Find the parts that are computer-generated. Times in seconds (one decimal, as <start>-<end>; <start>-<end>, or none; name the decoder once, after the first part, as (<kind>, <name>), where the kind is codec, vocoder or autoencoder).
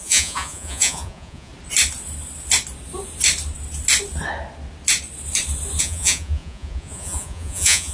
0.0-1.5 (vocoder, Vocos); 5.8-7.9